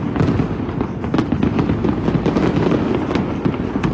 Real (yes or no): yes